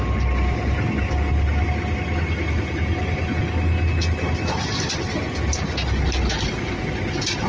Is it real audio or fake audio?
real